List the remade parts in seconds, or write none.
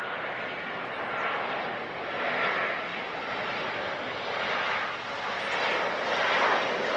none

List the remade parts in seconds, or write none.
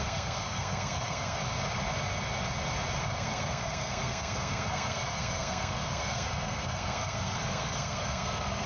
0.0-1.4 (codec, SNAC); 3.0-8.7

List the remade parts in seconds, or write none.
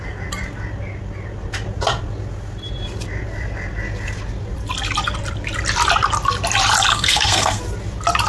6.9-7.6 (codec, SNAC)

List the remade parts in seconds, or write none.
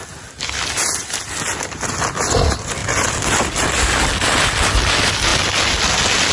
none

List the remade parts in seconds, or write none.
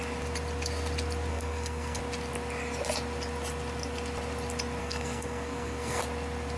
1.3-2.0 (codec, SNAC); 4.8-6.0